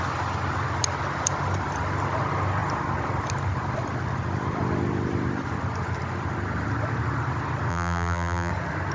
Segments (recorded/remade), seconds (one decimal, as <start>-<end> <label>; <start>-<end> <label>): 0.0-7.7 recorded; 7.7-8.5 remade; 8.5-8.9 recorded